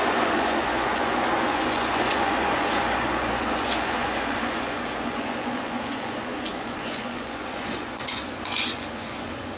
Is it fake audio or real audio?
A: fake